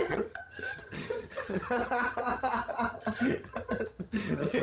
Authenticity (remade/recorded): remade